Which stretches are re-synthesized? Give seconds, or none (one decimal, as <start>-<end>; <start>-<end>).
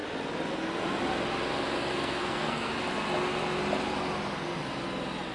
1.8-2.7